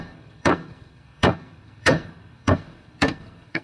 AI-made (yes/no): yes